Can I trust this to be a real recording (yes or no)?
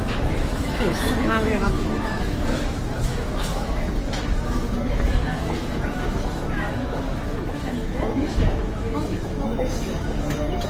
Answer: no